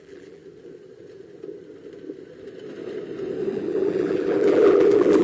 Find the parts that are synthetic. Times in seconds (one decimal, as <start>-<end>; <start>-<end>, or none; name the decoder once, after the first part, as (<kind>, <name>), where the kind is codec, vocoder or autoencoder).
0.0-0.4 (vocoder, BigVGAN v2); 3.5-5.2